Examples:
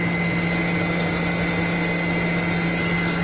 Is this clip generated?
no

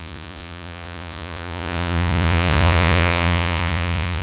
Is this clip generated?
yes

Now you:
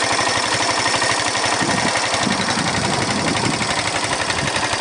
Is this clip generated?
no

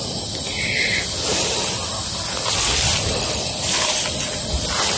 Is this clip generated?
no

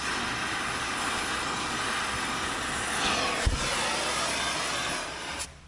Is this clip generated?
no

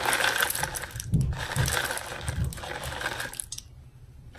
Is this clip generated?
no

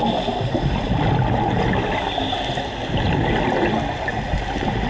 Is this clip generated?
no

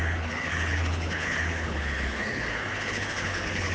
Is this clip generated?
yes